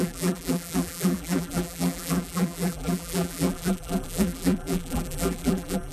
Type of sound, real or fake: fake